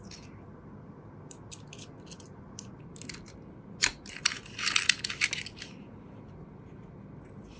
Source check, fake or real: real